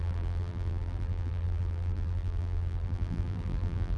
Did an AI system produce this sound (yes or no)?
yes